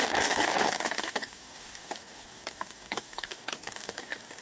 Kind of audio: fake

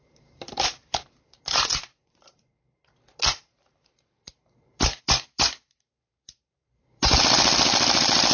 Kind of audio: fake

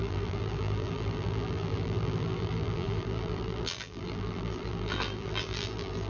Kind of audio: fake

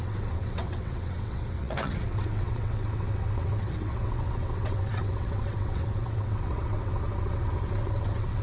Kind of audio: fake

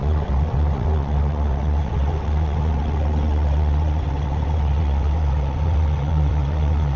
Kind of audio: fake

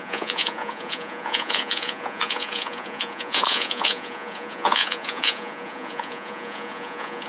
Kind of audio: fake